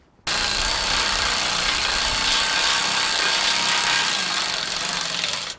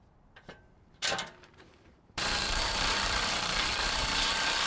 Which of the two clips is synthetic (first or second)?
second